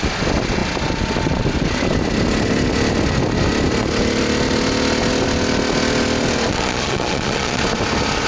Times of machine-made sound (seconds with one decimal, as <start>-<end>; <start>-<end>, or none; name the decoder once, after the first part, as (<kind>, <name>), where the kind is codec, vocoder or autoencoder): 6.5-7.6 (vocoder, Vocos)